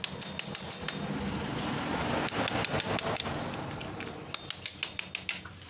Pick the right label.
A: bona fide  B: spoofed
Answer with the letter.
A